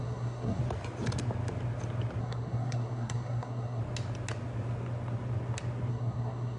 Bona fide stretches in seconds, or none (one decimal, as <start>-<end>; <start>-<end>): 0.6-2.2; 3.8-5.9